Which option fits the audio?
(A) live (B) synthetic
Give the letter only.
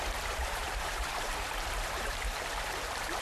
B